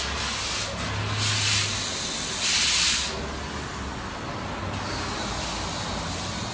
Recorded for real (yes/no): yes